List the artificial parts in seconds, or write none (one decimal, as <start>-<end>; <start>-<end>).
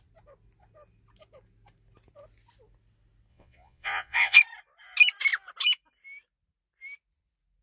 3.3-4.4